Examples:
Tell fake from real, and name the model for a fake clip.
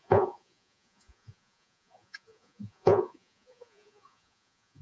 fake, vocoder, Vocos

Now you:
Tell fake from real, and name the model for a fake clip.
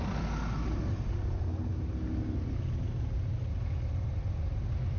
real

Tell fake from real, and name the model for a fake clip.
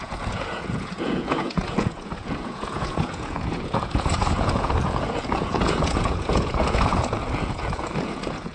fake, vocoder, Vocos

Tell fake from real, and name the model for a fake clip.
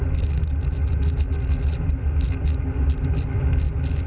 real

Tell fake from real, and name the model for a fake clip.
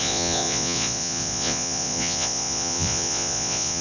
fake, vocoder, Vocos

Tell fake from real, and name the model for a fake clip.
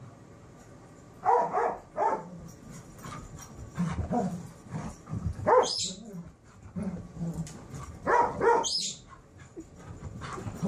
real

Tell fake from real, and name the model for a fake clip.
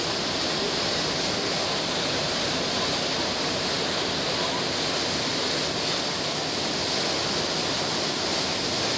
real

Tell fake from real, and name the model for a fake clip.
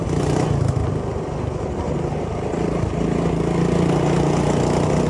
real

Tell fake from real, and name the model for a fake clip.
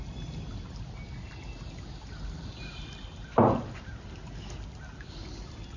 real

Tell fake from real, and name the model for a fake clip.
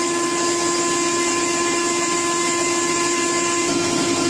real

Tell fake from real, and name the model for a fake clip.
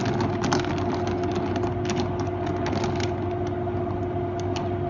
real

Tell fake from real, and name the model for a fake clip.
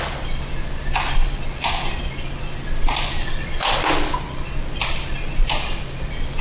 real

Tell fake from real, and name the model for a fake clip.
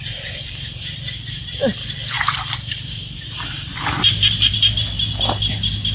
real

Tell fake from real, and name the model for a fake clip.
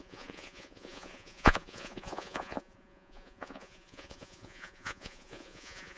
fake, vocoder, Vocos